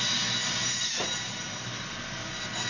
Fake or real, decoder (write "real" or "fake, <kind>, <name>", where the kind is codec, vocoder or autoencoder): real